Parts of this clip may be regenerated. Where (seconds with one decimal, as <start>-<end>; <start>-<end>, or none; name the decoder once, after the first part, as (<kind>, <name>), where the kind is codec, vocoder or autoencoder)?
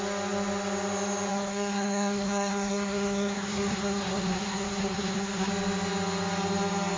1.3-5.5 (codec, SNAC)